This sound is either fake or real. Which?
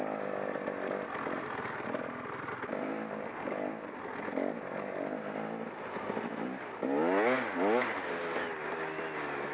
real